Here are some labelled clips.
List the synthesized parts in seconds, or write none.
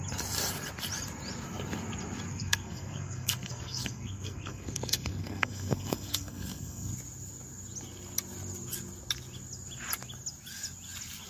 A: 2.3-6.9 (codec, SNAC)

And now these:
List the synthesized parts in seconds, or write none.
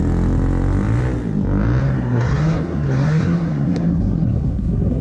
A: 1.8-5.0 (codec, SNAC)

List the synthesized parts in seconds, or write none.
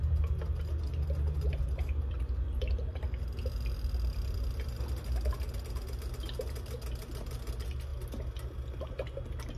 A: none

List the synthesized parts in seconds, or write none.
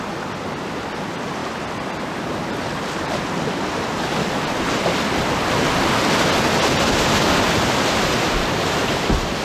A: none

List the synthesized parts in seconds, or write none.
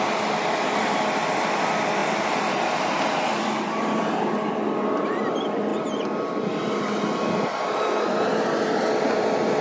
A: none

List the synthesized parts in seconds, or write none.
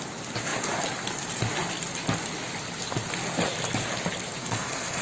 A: 4.4-5.0 (codec, SNAC)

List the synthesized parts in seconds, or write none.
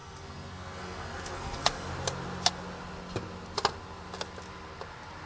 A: 0.0-1.9 (codec, SNAC)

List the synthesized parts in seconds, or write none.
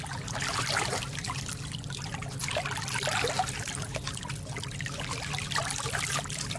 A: none